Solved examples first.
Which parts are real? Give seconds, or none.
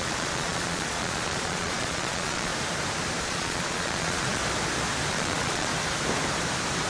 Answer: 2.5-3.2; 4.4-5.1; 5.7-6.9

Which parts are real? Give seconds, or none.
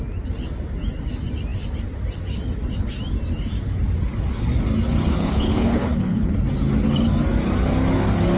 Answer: 0.0-5.1; 6.3-8.4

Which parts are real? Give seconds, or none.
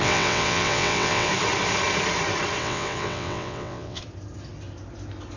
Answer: 1.3-2.6; 4.0-5.4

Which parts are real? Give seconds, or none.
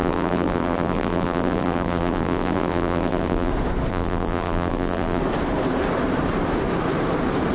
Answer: 3.5-3.9; 5.2-7.5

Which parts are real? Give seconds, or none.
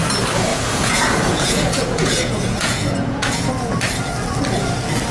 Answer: 0.0-0.5; 3.5-5.1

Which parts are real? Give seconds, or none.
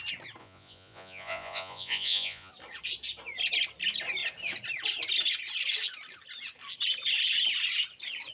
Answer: 0.0-0.4; 2.5-8.3